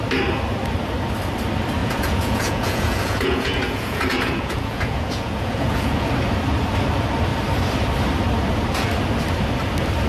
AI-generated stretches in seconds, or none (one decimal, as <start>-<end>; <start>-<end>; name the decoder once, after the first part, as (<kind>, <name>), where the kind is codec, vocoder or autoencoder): 1.8-6.1 (vocoder, Vocos)